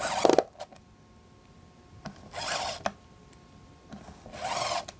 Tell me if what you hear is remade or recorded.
recorded